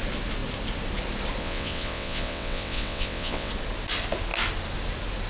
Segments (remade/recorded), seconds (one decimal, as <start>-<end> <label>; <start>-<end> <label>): 0.0-1.4 recorded; 1.4-3.5 remade; 3.5-5.3 recorded